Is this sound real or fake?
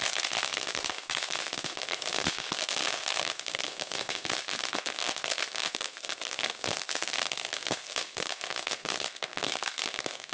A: fake